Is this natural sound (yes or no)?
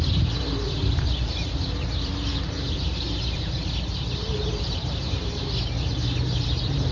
no